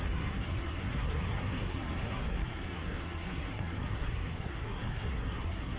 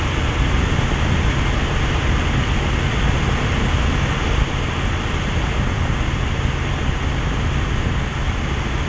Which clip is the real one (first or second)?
second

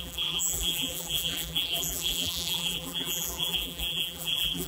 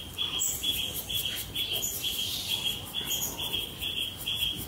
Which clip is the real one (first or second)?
second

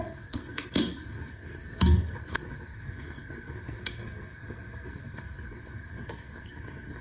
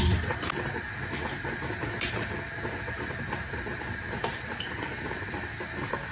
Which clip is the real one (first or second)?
second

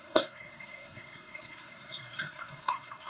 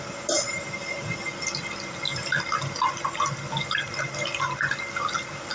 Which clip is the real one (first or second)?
second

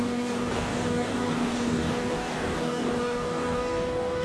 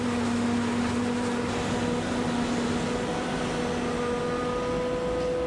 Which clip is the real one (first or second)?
second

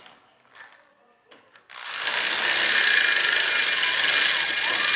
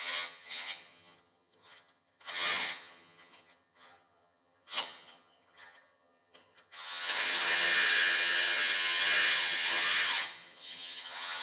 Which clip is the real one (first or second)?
first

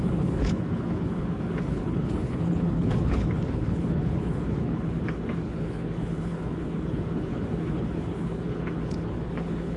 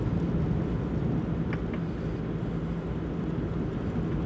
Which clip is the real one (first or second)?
second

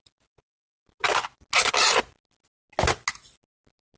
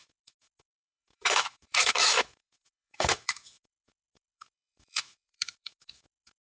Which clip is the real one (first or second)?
first